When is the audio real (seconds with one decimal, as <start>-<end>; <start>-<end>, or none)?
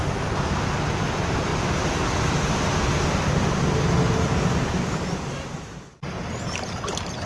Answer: 0.0-7.3